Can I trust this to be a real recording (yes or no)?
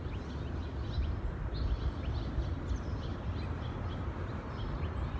yes